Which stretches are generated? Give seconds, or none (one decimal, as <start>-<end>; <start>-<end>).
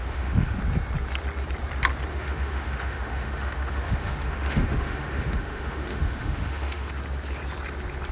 0.0-0.6; 2.1-6.9